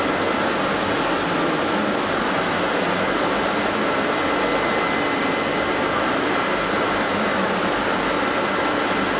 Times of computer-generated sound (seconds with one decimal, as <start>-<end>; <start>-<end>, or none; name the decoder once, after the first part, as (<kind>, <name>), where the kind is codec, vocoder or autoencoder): none